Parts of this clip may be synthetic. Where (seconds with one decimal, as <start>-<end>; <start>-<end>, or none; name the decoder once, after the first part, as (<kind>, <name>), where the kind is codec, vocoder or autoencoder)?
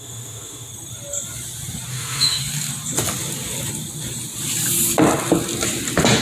0.0-0.7 (autoencoder, DAC-VAE); 1.9-2.4